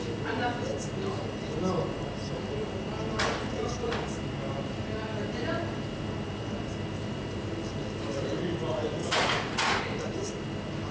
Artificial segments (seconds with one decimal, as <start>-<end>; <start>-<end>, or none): 9.0-9.8